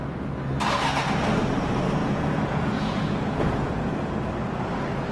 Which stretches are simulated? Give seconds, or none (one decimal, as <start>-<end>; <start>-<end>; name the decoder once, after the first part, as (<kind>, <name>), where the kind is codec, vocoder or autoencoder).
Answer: 2.0-4.1 (vocoder, Vocos)